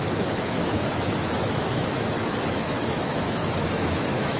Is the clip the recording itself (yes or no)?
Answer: no